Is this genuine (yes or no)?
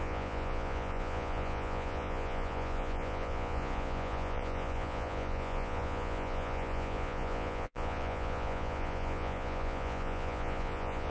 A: no